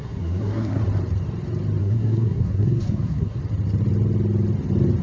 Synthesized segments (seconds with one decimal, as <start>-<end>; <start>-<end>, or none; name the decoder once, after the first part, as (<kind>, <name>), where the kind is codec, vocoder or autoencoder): 0.0-0.8 (codec, SNAC); 1.8-3.4